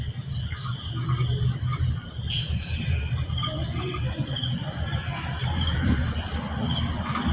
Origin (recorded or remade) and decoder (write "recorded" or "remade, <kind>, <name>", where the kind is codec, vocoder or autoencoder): recorded